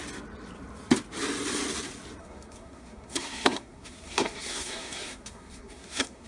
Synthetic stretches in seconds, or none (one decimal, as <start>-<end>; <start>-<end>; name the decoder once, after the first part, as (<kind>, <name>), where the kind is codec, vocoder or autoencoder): 2.2-6.3 (codec, SNAC)